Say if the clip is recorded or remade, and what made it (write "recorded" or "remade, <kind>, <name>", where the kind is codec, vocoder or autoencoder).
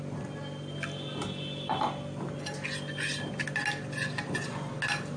recorded